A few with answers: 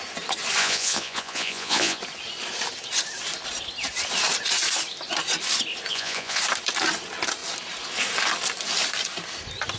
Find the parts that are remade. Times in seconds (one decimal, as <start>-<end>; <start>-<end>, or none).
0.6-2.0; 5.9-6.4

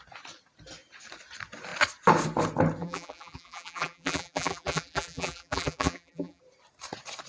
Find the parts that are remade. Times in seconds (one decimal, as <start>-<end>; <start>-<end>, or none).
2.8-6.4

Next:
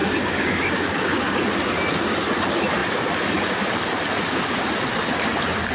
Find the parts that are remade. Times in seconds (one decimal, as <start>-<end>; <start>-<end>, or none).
0.0-1.4

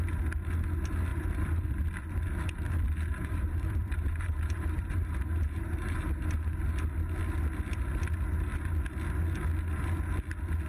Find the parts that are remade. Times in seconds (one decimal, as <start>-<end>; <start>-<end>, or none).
1.1-1.7; 3.1-6.6

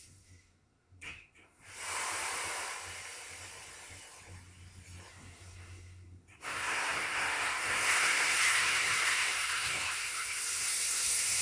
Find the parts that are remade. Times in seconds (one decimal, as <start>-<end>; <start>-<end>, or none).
0.0-1.6; 5.1-11.4

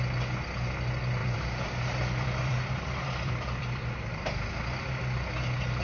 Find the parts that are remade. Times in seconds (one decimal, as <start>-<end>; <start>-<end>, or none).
1.2-4.5

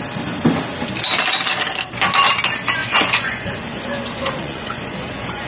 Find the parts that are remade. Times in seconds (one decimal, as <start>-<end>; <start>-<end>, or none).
2.8-5.5